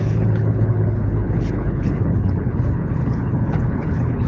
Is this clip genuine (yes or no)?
no